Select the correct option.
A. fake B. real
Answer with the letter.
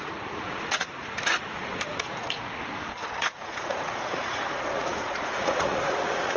A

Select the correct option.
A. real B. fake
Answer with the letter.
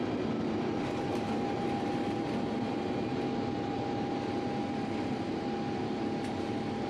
A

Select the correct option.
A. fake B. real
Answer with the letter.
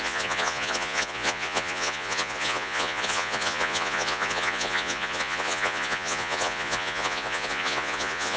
A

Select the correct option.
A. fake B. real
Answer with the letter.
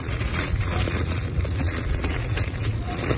A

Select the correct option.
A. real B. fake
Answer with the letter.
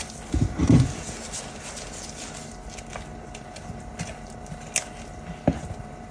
A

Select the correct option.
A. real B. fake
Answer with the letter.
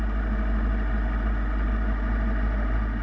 A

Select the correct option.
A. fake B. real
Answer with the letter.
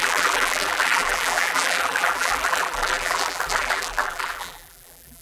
A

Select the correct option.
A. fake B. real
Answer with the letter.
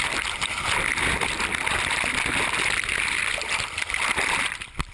B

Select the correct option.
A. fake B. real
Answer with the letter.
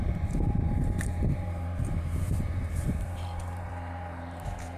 A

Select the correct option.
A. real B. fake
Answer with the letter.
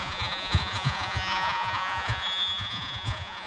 B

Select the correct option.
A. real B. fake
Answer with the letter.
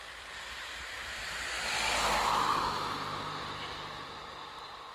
A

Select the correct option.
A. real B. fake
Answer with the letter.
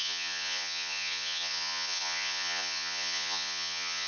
B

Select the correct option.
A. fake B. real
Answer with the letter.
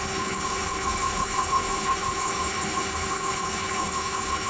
A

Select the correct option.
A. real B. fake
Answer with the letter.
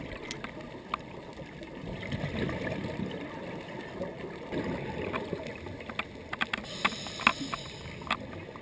A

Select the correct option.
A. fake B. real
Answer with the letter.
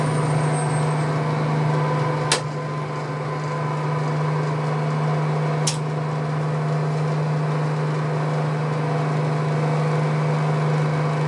B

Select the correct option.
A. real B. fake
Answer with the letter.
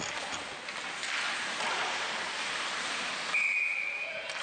A